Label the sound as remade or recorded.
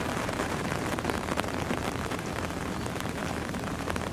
remade